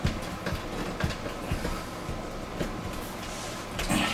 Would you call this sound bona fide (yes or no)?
yes